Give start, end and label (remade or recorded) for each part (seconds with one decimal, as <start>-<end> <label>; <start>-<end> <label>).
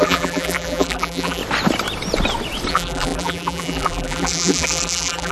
0.0-1.4 remade; 1.4-2.7 recorded; 2.7-5.3 remade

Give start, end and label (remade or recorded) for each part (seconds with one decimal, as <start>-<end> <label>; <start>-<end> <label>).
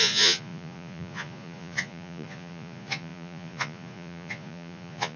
0.0-5.2 remade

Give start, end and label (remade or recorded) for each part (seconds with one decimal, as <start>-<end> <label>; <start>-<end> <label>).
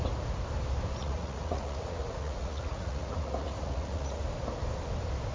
0.0-1.0 recorded; 1.0-4.2 remade; 4.2-5.3 recorded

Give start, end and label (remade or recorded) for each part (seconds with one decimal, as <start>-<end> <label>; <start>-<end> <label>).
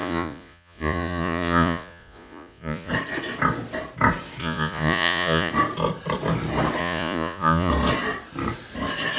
0.0-2.9 remade; 2.9-4.4 recorded; 4.4-5.5 remade; 5.5-6.8 recorded; 6.8-7.7 remade; 7.7-9.2 recorded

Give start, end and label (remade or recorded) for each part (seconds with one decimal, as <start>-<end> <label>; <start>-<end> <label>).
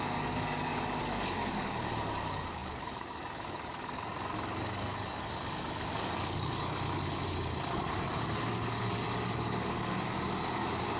0.0-11.0 remade